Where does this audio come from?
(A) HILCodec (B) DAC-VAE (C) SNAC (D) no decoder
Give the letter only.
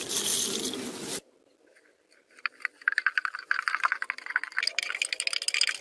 D